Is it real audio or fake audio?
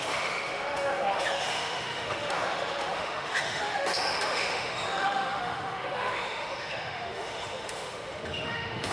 fake